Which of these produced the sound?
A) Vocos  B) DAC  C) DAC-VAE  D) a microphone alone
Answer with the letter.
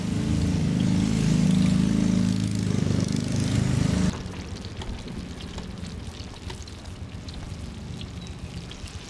D